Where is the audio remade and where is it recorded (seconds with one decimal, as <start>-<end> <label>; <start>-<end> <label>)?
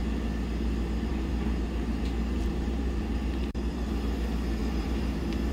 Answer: 0.0-1.1 recorded; 1.1-3.9 remade; 3.9-4.6 recorded; 4.6-5.5 remade